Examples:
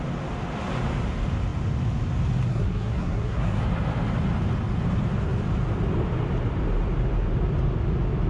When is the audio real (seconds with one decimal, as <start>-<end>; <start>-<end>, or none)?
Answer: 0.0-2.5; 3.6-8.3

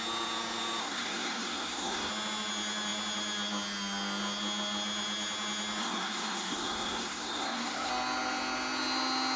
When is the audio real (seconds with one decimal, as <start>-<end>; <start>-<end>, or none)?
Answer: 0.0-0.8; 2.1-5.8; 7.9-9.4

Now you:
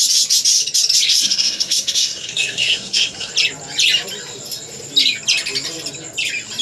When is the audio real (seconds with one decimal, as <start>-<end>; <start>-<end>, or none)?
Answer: 0.0-1.1; 3.3-6.6